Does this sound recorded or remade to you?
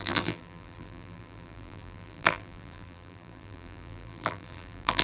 remade